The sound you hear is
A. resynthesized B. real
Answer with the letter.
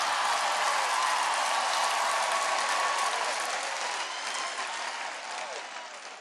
B